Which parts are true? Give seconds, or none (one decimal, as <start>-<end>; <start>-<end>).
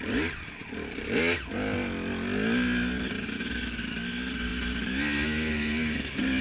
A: 0.0-6.4